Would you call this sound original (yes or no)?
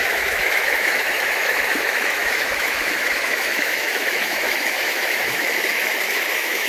no